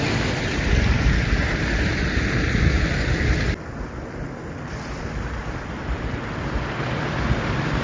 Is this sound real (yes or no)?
yes